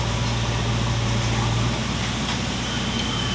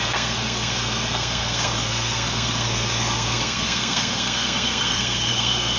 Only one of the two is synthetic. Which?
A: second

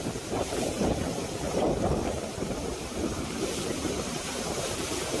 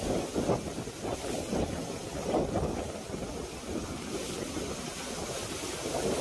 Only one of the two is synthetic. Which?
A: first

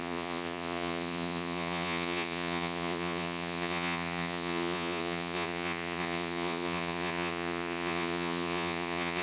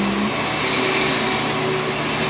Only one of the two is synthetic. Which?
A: first